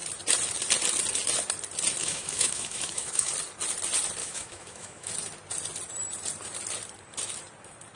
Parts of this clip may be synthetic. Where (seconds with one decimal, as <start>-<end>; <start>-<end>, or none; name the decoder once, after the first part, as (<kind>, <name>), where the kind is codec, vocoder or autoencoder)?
2.0-3.3 (autoencoder, DAC-VAE); 4.2-5.1